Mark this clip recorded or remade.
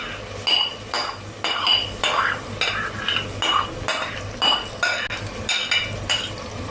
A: recorded